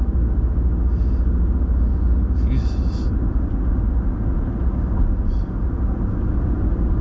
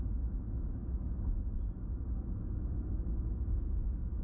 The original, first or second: first